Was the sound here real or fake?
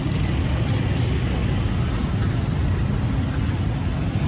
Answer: real